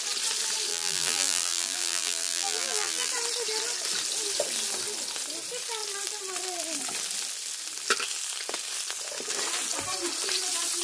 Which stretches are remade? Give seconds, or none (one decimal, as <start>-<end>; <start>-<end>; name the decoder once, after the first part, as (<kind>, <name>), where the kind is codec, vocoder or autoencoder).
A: 0.7-3.1 (vocoder, BigVGAN v2)